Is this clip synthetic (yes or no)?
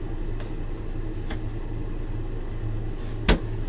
no